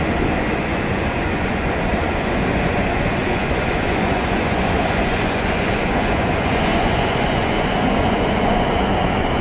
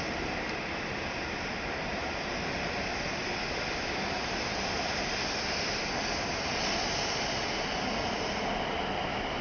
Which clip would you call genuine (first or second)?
second